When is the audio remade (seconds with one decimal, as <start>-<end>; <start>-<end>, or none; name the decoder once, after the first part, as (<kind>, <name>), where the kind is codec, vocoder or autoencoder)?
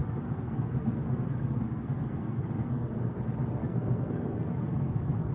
0.0-3.2 (codec, SNAC); 3.6-5.3